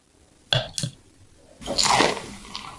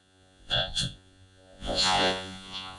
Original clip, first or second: first